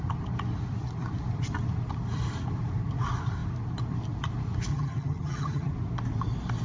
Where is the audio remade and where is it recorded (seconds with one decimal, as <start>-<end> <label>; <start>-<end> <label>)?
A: 0.0-4.7 recorded; 4.7-5.7 remade; 5.7-6.6 recorded